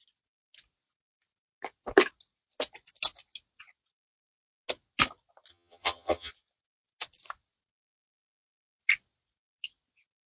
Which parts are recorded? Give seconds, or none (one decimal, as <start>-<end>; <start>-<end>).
0.0-5.5; 6.3-10.3